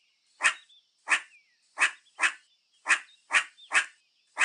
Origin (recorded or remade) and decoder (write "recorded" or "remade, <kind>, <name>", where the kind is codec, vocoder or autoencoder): recorded